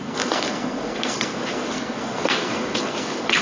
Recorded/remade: remade